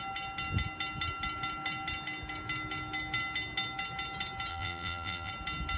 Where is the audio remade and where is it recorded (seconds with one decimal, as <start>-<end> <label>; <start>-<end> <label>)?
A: 0.0-4.5 recorded; 4.5-5.3 remade; 5.3-5.8 recorded